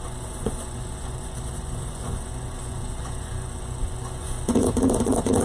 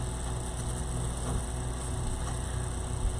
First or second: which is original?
second